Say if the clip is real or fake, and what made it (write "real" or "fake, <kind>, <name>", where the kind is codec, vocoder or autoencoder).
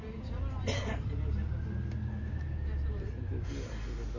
real